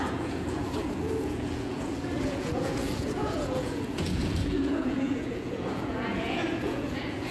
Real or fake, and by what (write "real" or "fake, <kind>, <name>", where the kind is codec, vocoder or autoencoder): fake, vocoder, Vocos